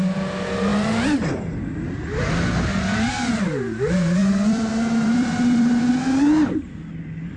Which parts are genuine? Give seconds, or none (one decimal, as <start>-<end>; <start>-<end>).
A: 0.0-4.2; 5.9-7.4